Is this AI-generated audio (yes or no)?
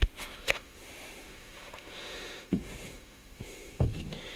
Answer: yes